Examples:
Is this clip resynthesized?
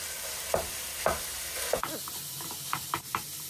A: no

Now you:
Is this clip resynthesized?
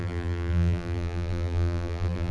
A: yes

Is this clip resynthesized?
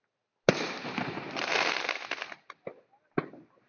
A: no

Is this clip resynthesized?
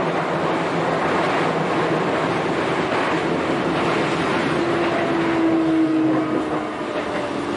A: no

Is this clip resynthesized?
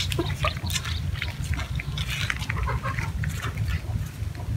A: no